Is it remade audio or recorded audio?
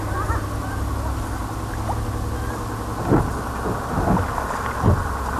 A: recorded